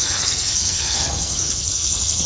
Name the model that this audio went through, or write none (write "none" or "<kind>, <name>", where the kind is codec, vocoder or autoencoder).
codec, SNAC